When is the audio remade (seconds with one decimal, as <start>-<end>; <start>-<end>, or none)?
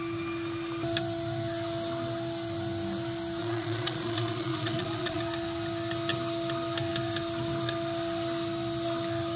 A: 3.4-5.2